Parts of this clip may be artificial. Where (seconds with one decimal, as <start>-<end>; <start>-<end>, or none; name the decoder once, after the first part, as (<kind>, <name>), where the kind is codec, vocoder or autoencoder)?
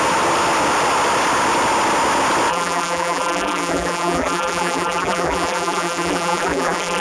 2.5-7.0 (vocoder, BigVGAN v2)